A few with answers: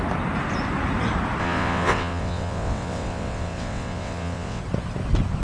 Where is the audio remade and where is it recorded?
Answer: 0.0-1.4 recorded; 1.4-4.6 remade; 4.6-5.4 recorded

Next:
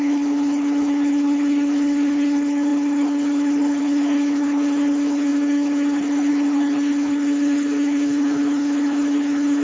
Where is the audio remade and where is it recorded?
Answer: 0.0-9.6 remade

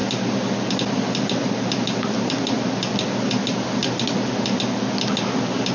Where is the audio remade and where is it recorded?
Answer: 0.0-5.7 recorded